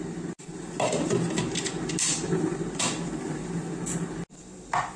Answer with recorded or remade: recorded